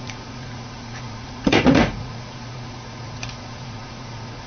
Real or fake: fake